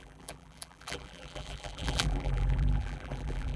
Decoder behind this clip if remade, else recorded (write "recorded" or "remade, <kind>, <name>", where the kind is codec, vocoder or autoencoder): remade, vocoder, BigVGAN v2